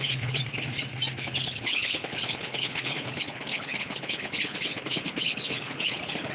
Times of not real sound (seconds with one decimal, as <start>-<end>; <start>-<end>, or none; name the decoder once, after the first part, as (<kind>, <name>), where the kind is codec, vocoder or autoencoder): 0.0-0.4 (codec, HILCodec); 1.2-6.3